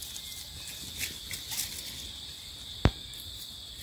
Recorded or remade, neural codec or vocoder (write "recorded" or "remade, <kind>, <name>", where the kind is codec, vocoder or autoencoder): remade, vocoder, BigVGAN v2